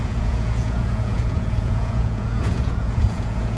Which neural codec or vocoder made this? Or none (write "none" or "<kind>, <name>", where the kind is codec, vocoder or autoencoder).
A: vocoder, Vocos